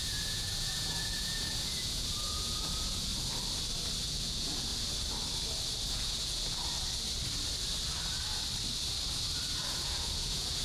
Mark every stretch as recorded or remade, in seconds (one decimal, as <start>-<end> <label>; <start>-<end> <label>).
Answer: 0.0-3.1 remade; 3.1-4.0 recorded; 4.0-4.7 remade; 4.7-5.9 recorded; 5.9-6.6 remade; 6.6-9.7 recorded; 9.7-10.6 remade